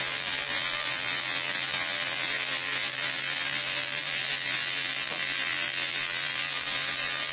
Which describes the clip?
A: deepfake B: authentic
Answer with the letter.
A